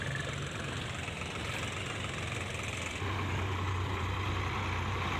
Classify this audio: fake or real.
real